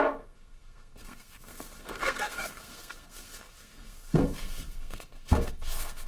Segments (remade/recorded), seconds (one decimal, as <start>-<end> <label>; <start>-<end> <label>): 0.0-6.1 remade